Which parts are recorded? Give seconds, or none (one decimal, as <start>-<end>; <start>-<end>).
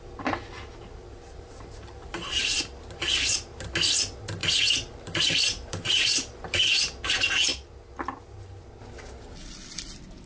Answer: 0.0-1.0; 2.4-4.4; 6.8-10.3